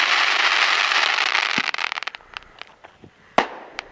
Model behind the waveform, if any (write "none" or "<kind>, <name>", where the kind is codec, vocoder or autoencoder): vocoder, BigVGAN v2